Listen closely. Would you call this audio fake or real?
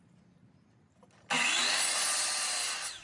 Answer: real